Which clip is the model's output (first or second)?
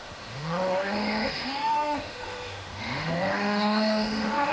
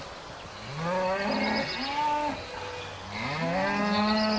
first